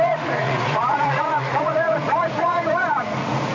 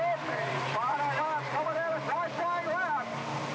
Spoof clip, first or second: first